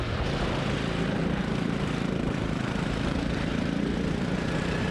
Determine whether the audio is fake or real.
fake